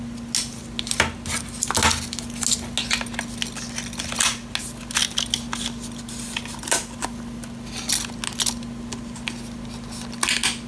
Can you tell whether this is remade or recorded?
recorded